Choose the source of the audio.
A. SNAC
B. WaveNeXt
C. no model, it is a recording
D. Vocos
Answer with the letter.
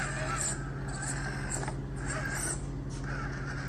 C